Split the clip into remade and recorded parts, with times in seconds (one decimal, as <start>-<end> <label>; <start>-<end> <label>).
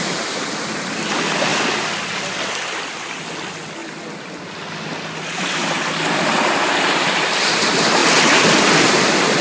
0.0-9.4 recorded